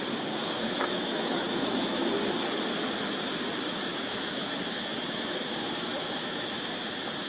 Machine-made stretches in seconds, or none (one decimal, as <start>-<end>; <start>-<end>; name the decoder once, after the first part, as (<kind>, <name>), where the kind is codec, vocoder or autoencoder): 0.4-2.0 (autoencoder, DAC-VAE); 3.9-6.8